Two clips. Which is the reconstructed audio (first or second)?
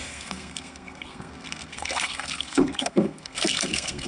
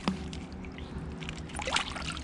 first